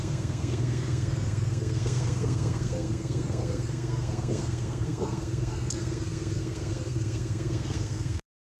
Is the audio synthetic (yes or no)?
yes